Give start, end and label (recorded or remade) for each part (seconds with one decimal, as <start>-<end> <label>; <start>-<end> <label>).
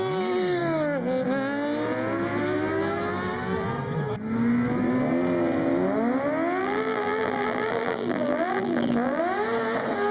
0.0-6.6 recorded; 6.6-9.2 remade; 9.2-10.1 recorded